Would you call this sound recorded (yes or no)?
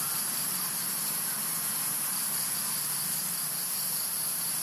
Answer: yes